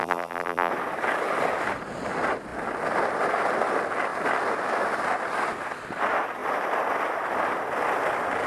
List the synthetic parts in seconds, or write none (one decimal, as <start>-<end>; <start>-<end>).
0.0-0.7